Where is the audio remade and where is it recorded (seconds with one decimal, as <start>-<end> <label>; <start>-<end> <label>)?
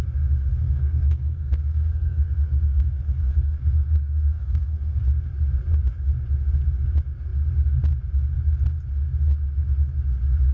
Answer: 0.0-0.5 recorded; 0.5-5.0 remade; 5.0-10.5 recorded